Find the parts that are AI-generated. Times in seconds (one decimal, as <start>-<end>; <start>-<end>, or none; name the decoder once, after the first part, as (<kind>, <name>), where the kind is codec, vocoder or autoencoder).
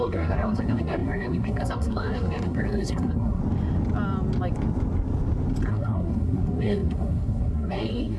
0.0-3.4 (codec, SNAC); 5.7-8.2